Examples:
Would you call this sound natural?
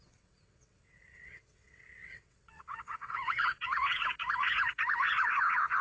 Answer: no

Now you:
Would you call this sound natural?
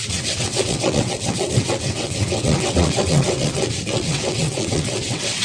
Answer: no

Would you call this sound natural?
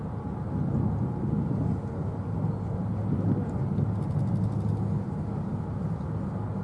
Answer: yes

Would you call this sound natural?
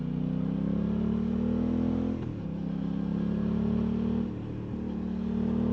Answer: yes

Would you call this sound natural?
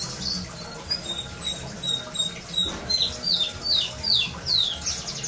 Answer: yes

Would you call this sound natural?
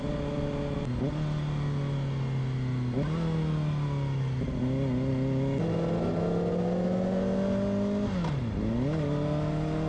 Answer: yes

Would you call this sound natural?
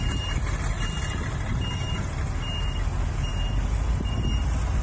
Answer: yes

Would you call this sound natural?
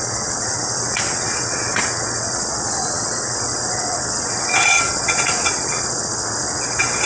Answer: no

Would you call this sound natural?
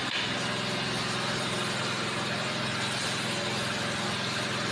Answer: yes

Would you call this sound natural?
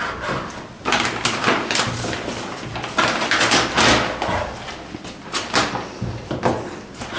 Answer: yes